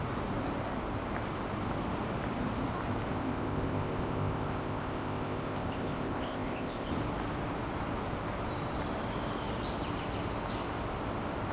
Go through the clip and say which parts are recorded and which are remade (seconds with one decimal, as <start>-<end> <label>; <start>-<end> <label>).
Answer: 0.0-3.1 recorded; 3.1-6.9 remade; 6.9-11.5 recorded